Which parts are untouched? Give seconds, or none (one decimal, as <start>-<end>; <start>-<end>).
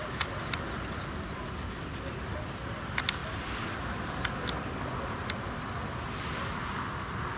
0.0-7.4